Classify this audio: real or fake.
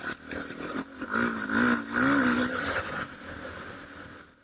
real